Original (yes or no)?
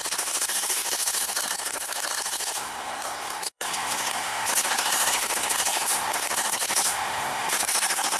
no